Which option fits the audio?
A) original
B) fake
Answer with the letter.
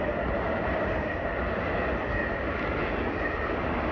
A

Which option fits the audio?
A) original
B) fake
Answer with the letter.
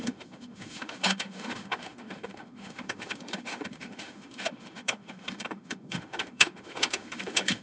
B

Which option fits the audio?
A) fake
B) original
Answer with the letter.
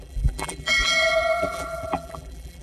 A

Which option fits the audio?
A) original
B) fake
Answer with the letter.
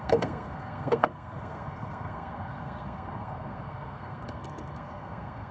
B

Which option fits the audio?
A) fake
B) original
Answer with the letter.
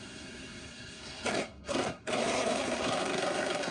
A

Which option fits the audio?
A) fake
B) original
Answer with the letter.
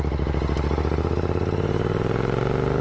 B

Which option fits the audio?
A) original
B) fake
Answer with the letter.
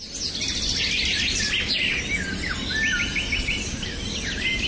A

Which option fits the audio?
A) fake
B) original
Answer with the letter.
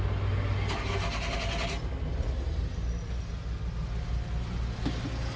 B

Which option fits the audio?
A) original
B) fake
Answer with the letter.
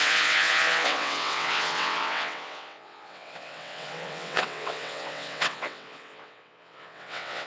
B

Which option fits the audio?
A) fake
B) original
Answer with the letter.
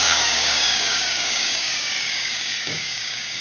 A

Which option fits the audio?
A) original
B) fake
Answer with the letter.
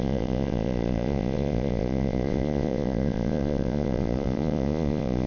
B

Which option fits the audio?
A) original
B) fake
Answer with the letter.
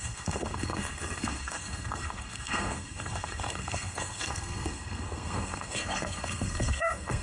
B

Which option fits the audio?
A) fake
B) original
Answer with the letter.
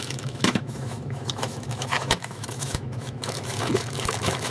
A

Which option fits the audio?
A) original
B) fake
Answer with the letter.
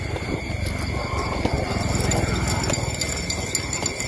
A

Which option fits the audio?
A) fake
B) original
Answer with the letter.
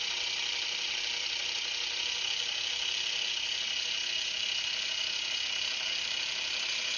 B